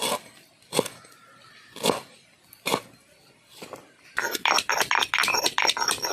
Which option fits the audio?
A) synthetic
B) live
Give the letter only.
B